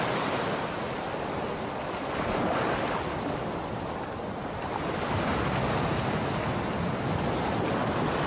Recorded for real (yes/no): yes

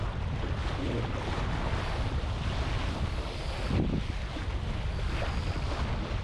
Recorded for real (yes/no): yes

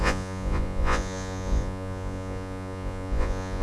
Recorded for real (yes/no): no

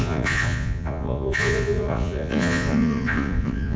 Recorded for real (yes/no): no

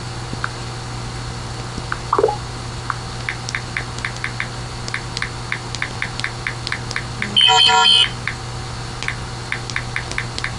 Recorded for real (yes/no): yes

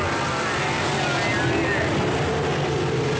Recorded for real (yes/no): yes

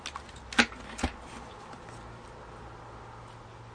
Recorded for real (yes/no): yes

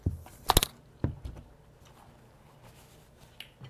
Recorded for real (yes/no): yes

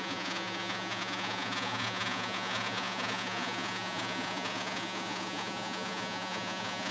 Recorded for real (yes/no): no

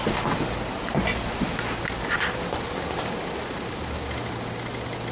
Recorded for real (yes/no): yes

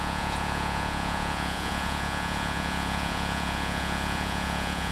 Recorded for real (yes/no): no